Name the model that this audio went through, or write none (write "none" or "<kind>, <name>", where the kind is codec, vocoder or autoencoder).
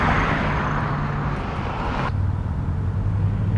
none